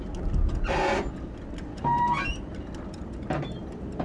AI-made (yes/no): no